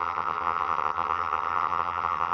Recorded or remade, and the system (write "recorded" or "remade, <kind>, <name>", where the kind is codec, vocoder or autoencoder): remade, vocoder, HiFi-GAN